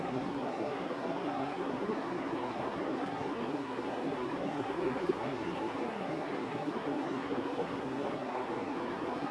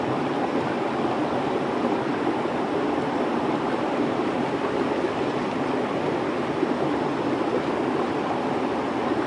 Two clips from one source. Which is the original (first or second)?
second